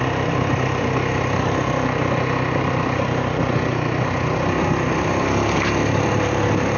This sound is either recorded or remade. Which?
recorded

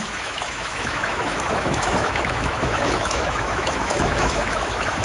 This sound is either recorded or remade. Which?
remade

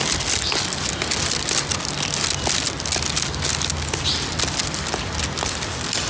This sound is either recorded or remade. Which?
recorded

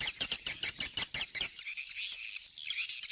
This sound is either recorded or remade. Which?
recorded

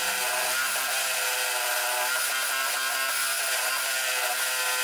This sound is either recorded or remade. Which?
recorded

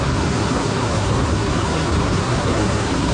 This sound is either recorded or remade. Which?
remade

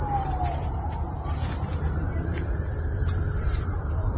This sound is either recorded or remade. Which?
remade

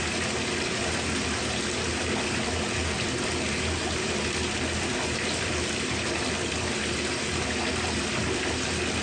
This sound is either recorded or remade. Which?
recorded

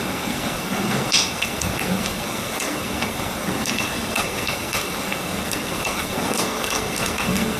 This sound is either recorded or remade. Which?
remade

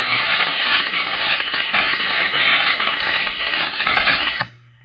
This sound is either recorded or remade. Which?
remade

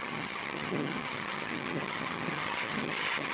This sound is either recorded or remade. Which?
remade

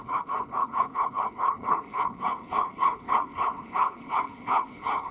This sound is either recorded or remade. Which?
remade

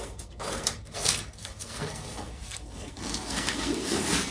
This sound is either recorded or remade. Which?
remade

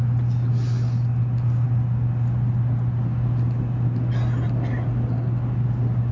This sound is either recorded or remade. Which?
recorded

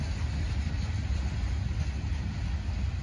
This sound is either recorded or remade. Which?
recorded